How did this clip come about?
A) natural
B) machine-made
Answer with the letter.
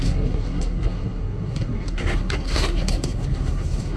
B